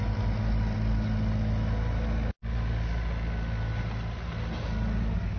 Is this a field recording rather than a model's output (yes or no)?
yes